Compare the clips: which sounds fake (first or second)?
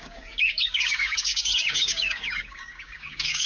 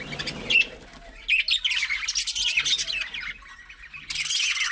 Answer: first